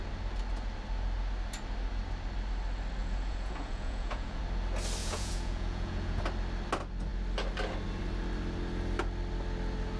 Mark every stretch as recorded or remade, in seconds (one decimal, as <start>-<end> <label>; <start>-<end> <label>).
0.0-3.0 recorded; 3.0-4.4 remade; 4.4-5.0 recorded; 5.0-6.2 remade; 6.2-10.0 recorded